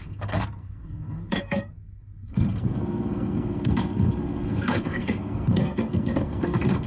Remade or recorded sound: remade